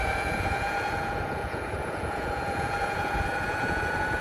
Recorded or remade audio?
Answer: remade